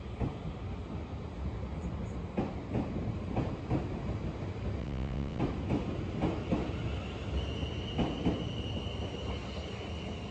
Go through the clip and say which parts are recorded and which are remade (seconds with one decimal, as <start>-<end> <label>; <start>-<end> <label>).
0.0-4.8 recorded; 4.8-5.4 remade; 5.4-10.3 recorded